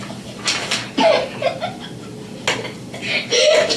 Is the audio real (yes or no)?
yes